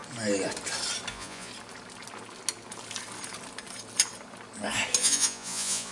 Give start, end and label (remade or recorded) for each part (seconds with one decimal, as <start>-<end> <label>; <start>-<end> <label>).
0.0-1.1 recorded; 1.1-1.5 remade; 1.5-5.0 recorded; 5.0-5.9 remade